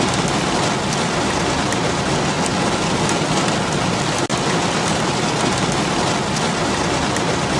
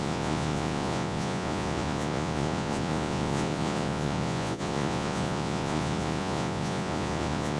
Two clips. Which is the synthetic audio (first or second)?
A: second